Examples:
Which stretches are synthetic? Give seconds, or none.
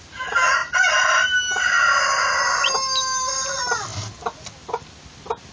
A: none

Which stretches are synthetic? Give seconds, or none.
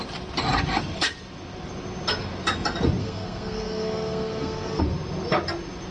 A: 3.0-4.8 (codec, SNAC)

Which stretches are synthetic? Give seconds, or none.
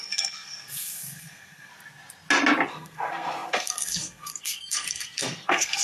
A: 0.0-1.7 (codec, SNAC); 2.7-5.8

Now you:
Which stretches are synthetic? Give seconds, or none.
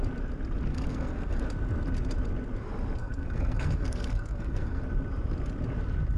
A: 0.7-1.4 (codec, SNAC); 3.0-4.8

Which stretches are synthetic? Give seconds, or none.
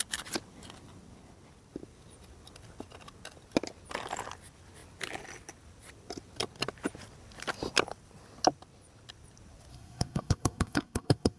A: 9.7-11.4 (codec, SNAC)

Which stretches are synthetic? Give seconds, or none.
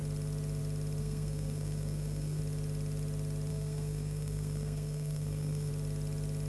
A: 1.0-2.4 (codec, SNAC); 3.5-5.7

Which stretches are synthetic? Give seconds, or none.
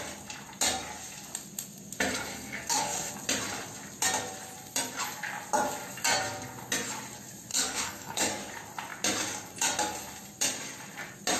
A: 2.3-3.1 (codec, SNAC); 7.5-8.3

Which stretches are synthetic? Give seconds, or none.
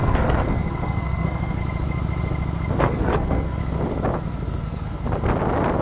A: 0.0-1.6 (codec, SNAC); 2.8-3.6